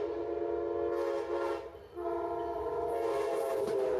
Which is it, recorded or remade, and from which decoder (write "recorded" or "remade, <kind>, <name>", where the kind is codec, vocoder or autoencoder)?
recorded